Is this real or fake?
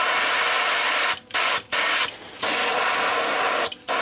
real